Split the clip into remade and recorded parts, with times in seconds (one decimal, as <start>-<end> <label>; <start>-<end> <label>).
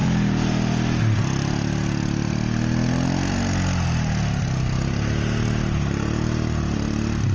0.0-7.3 recorded